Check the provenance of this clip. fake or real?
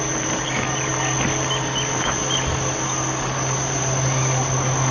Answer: real